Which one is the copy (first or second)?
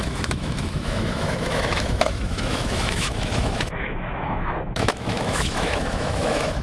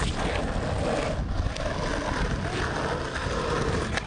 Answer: first